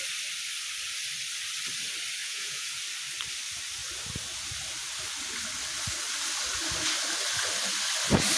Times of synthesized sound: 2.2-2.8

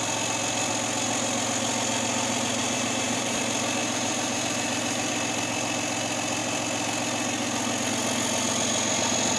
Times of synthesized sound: 2.6-3.4; 3.8-5.1

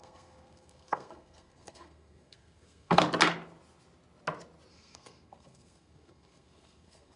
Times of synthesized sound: 0.0-3.0; 4.7-7.2

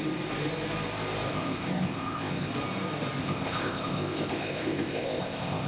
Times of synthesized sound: 1.3-2.5; 3.2-5.7

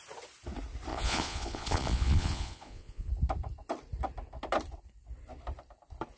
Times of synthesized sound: 0.9-3.1

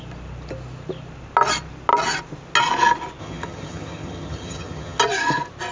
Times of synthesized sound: 3.2-5.0

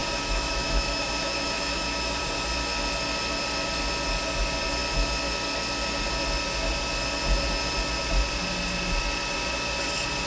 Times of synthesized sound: 0.0-2.2

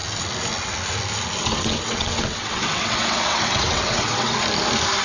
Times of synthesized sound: 1.4-4.4